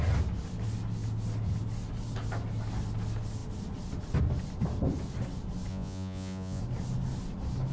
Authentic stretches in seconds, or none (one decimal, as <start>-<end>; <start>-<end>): 0.0-5.7; 6.6-7.7